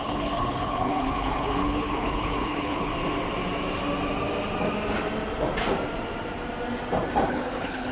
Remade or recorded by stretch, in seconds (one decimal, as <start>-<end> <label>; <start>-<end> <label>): 0.0-2.9 remade; 2.9-7.3 recorded; 7.3-7.9 remade